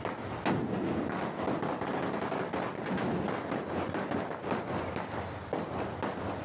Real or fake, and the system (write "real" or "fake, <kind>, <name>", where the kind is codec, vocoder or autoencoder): real